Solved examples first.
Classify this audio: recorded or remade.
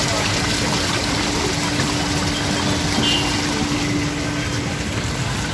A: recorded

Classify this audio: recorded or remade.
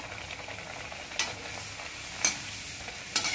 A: recorded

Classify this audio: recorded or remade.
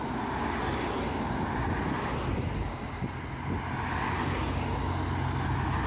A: recorded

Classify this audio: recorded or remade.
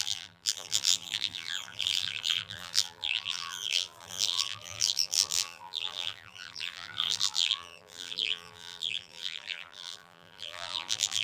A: remade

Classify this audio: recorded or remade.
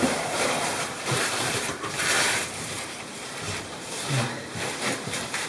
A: remade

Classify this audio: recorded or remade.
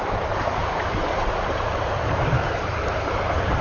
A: remade